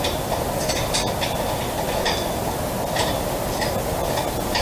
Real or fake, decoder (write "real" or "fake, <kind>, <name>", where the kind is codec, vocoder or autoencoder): real